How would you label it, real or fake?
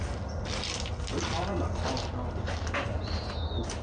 real